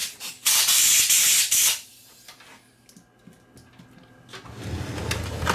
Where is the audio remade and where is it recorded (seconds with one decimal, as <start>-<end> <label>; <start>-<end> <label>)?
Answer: 0.0-5.5 recorded